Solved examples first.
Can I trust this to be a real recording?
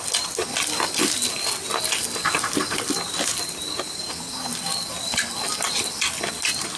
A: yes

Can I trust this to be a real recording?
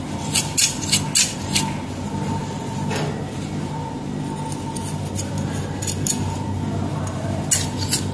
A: yes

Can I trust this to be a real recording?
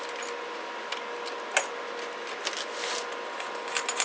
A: yes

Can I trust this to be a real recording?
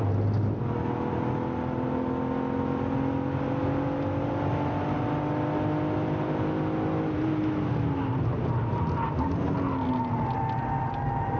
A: yes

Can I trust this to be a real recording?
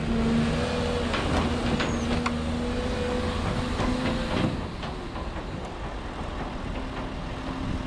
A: yes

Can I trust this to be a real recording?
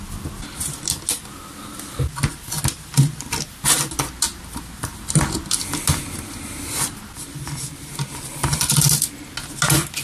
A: yes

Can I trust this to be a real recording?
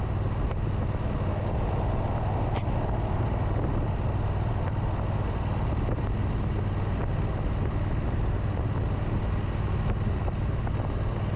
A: yes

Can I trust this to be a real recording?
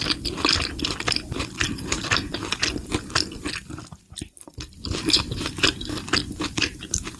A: yes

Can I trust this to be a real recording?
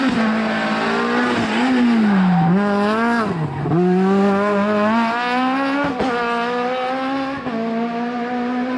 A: yes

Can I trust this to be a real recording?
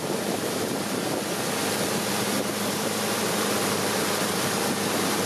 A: yes